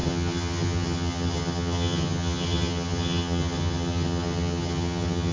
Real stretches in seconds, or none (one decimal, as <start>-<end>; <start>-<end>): none